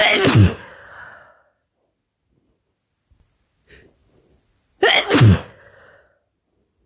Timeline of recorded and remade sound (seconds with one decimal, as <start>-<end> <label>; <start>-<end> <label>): 0.0-6.9 recorded